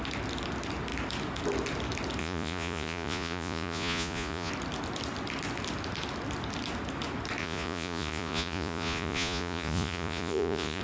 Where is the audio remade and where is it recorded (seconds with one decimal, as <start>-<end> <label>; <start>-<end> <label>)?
0.0-2.2 recorded; 2.2-4.5 remade; 4.5-7.4 recorded; 7.4-10.8 remade